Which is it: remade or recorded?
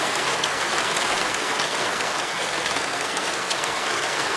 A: remade